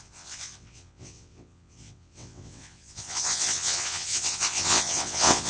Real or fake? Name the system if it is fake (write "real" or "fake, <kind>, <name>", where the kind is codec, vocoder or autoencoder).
fake, vocoder, WaveNeXt